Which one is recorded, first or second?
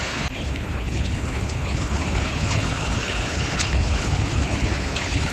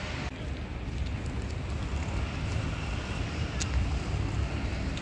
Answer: second